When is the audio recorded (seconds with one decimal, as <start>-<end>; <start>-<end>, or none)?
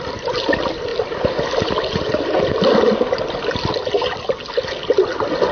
0.0-5.5